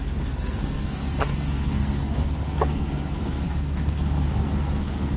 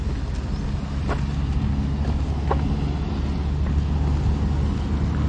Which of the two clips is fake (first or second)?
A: first